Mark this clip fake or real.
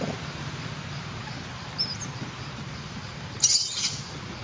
real